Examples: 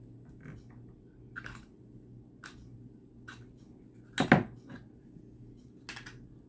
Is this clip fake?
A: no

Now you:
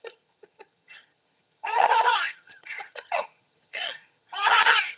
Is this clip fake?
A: yes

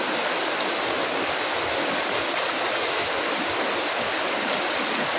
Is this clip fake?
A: no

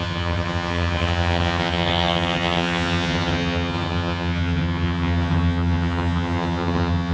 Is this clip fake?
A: yes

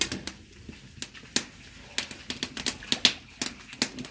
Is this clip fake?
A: no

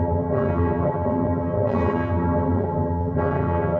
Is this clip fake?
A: yes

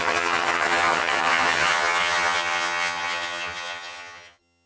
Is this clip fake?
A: yes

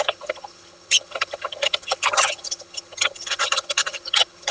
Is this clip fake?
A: yes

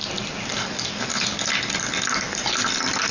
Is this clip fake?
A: no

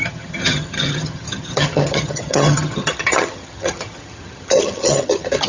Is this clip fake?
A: yes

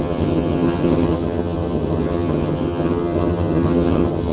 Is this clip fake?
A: yes